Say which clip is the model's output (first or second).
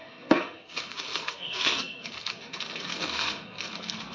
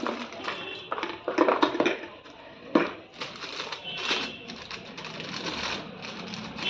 first